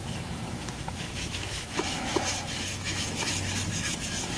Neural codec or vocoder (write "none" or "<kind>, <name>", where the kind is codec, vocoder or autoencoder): autoencoder, DAC-VAE